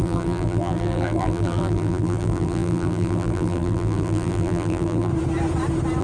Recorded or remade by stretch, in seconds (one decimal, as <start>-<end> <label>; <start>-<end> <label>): 0.0-5.1 remade; 5.1-6.0 recorded